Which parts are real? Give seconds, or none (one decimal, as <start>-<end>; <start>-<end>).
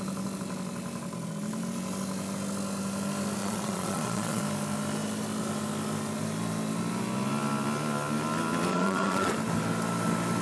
0.0-3.4; 4.4-8.7; 9.3-10.4